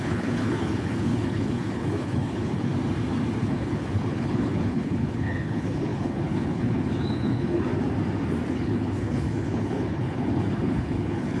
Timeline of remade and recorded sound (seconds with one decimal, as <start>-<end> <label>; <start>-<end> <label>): 0.0-2.7 remade; 2.7-3.4 recorded; 3.4-7.7 remade; 7.7-8.5 recorded; 8.5-11.4 remade